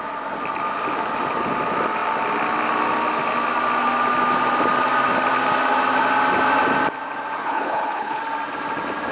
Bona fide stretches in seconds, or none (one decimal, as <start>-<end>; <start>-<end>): 0.0-7.4; 8.2-9.1